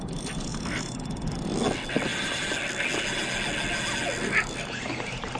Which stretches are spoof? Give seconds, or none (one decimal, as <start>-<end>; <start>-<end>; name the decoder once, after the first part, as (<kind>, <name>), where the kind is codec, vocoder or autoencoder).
none